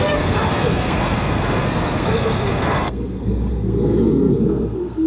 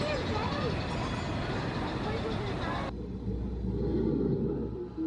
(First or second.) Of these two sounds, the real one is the second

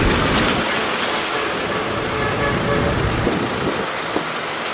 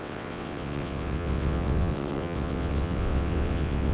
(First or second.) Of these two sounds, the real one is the first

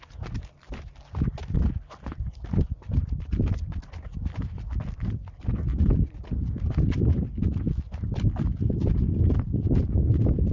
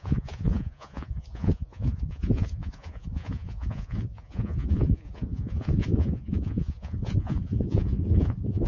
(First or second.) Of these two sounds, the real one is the first